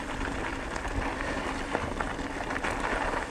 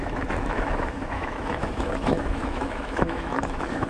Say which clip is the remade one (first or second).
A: second